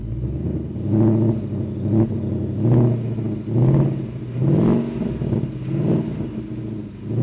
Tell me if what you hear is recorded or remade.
recorded